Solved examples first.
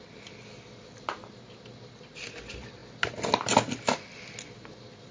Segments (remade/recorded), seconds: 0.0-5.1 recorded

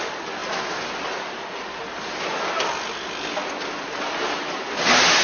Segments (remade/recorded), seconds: 0.0-5.2 recorded

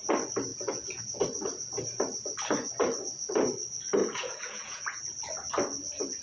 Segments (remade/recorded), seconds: 0.0-0.5 recorded; 0.5-1.0 remade; 1.0-4.0 recorded; 4.0-5.0 remade; 5.0-6.2 recorded